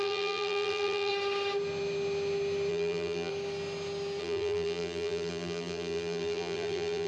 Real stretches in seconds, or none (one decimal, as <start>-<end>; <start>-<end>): 1.1-2.7; 3.3-4.2